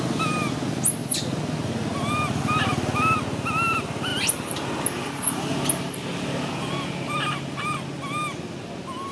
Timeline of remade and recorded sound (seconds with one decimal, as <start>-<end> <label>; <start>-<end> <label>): 0.0-9.1 recorded